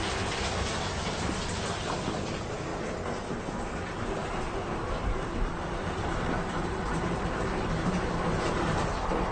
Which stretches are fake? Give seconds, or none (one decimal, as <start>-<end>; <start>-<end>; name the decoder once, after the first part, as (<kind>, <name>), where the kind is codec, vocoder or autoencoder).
4.2-9.3 (vocoder, BigVGAN v2)